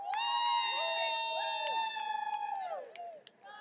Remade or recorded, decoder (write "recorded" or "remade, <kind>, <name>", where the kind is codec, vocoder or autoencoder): recorded